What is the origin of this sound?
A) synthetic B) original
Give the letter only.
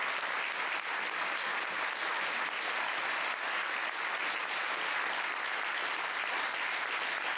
B